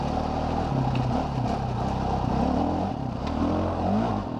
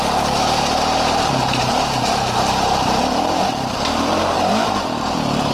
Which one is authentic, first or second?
first